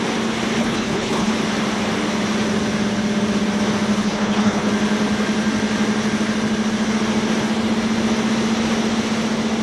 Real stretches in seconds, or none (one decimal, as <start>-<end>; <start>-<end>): 0.0-0.6; 1.3-3.9; 4.7-9.6